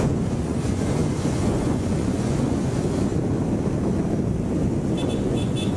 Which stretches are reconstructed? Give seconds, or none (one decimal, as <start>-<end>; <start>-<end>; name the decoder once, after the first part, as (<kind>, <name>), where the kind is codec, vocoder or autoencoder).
0.0-3.1 (vocoder, Vocos); 5.1-5.8